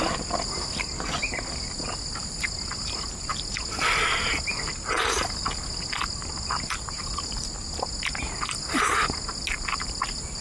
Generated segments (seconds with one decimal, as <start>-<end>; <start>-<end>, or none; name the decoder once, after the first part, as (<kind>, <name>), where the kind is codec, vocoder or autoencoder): none